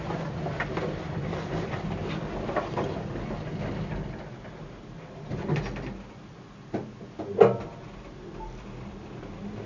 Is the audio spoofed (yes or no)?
no